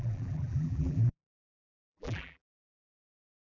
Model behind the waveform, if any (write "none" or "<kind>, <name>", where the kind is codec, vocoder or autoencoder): vocoder, BigVGAN v2